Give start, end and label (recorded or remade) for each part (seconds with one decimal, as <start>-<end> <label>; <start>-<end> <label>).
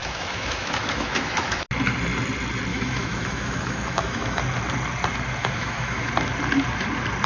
0.0-1.6 remade; 1.6-2.7 recorded; 2.7-4.4 remade; 4.4-5.4 recorded; 5.4-6.1 remade; 6.1-7.3 recorded